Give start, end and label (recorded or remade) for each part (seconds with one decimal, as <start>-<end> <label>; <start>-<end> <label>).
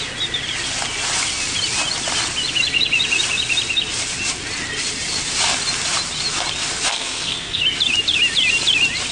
0.0-6.9 recorded; 6.9-7.6 remade; 7.6-9.1 recorded